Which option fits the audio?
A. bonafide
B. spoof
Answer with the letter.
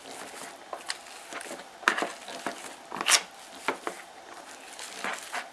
A